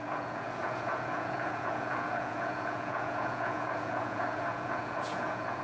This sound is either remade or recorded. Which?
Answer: remade